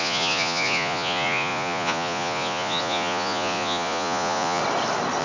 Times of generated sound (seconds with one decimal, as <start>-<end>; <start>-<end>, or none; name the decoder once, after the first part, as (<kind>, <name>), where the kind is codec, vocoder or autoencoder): 0.0-4.6 (vocoder, Vocos)